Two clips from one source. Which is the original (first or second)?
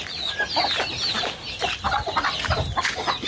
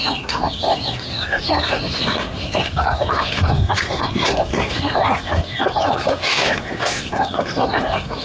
first